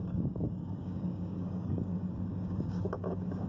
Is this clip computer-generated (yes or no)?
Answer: yes